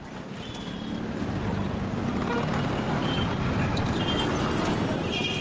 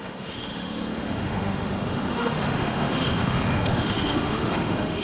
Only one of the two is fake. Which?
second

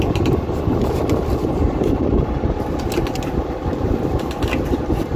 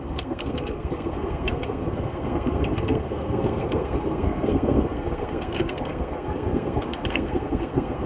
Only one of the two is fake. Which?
second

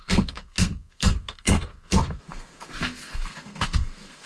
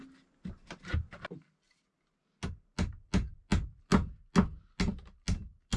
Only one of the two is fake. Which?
first